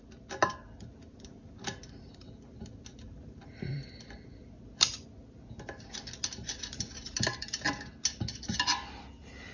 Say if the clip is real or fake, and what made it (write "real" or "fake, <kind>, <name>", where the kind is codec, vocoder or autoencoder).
real